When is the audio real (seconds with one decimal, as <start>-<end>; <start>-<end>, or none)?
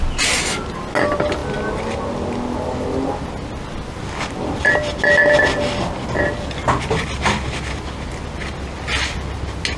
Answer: 0.0-9.8